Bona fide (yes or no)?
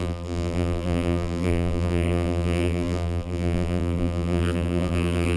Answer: no